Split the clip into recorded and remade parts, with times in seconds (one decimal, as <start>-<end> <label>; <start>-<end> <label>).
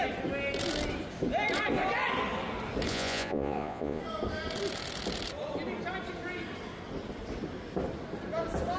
0.0-2.9 recorded; 2.9-4.0 remade; 4.0-8.8 recorded